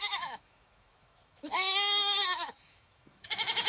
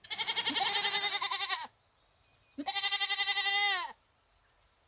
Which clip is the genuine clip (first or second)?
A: second